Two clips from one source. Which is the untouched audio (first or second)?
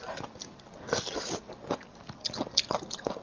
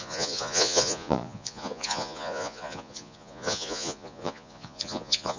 first